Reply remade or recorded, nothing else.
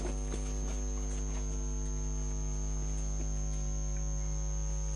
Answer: recorded